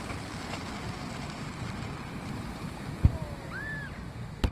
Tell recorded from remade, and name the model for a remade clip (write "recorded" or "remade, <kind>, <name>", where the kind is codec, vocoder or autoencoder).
recorded